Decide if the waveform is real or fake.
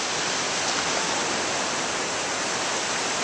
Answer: real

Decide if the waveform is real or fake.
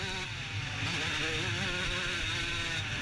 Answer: real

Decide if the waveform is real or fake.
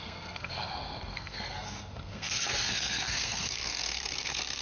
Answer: fake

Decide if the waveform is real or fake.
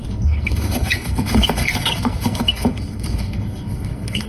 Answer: fake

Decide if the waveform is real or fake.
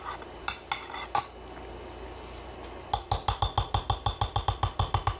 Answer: real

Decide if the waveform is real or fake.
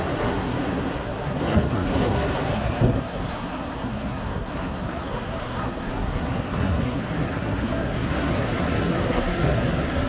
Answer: fake